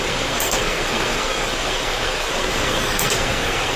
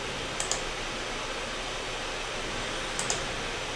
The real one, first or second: second